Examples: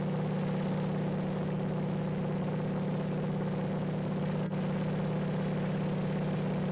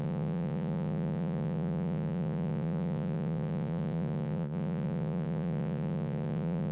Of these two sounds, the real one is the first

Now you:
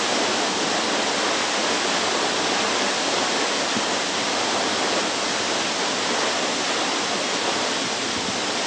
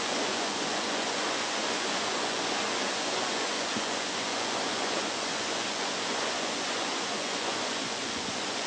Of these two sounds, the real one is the first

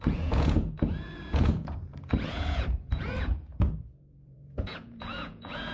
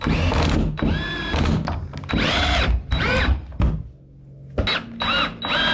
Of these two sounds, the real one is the second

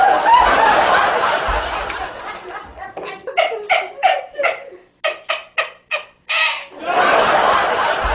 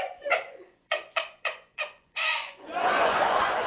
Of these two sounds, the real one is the first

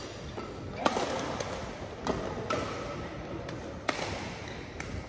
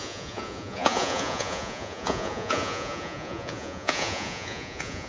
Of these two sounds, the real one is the first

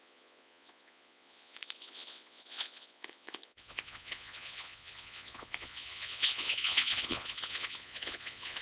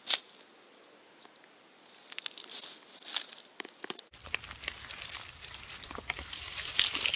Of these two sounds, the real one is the second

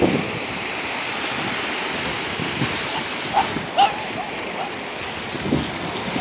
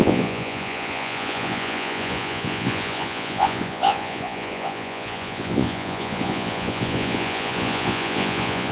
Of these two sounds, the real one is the first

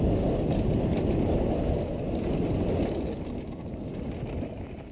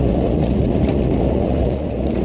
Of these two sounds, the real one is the first